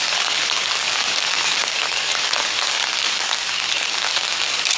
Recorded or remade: remade